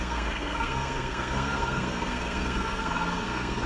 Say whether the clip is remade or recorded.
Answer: remade